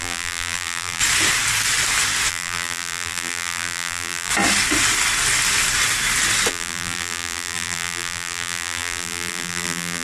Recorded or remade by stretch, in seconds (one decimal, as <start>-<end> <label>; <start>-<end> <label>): 0.0-1.0 remade; 1.0-2.3 recorded; 2.3-4.3 remade; 4.3-6.5 recorded; 6.5-10.0 remade